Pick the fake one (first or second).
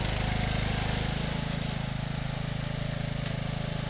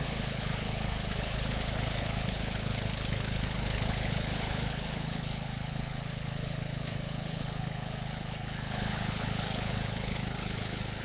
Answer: second